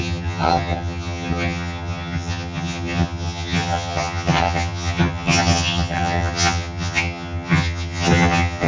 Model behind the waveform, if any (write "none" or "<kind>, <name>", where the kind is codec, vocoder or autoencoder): vocoder, HiFi-GAN